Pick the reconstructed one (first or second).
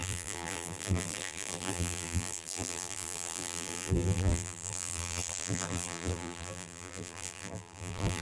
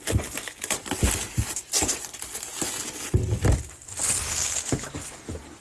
first